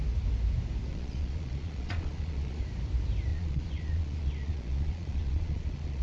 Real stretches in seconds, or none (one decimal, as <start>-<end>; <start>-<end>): 0.0-0.9; 2.6-3.3

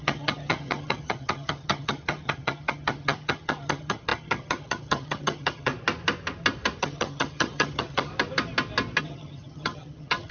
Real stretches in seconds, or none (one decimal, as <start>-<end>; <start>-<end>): 5.7-6.8; 8.1-9.0

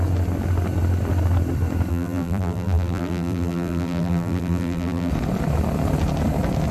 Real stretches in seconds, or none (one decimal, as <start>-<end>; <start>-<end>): 0.0-1.9; 5.1-6.7

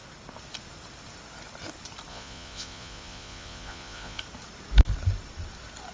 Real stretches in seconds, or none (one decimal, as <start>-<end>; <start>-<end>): 0.0-2.1; 4.2-5.9

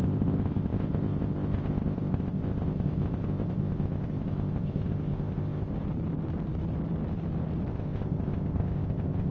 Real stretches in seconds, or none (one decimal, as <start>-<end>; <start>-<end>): 5.7-7.7

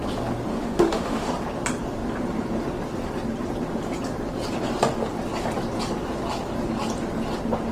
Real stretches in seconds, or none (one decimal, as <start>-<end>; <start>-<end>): 0.0-0.5; 1.3-7.7

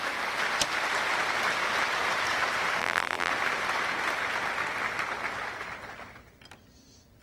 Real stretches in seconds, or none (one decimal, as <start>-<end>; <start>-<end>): 0.0-2.8; 3.3-7.2